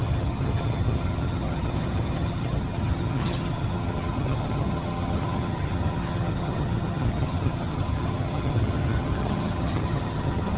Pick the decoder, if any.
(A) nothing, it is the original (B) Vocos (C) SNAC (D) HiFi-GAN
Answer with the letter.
D